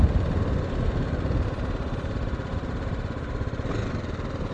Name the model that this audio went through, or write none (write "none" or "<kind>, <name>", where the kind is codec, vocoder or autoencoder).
none